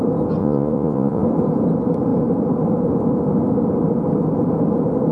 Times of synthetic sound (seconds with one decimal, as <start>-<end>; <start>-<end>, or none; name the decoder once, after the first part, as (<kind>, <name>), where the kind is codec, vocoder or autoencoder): 0.4-1.2 (vocoder, Vocos)